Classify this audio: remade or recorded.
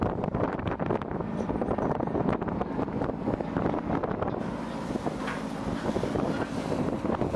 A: remade